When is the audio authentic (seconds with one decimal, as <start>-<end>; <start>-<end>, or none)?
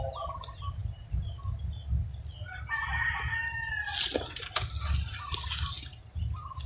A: 0.0-6.7